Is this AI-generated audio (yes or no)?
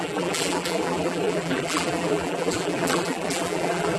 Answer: yes